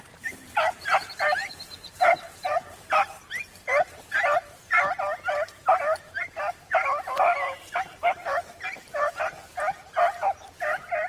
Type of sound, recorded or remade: remade